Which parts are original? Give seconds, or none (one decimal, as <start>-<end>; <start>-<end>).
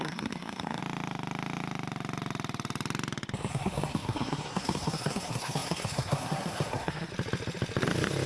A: 0.8-3.5; 7.1-8.3